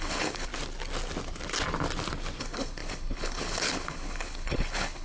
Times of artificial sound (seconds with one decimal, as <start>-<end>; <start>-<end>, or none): 0.0-0.5; 2.4-5.0